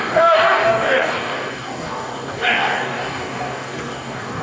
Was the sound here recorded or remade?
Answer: remade